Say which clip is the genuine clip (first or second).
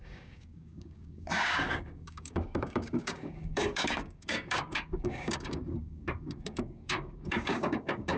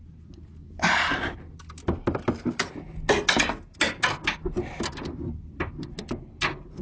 second